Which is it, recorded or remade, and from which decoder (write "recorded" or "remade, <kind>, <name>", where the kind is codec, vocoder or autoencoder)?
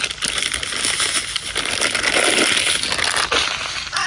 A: recorded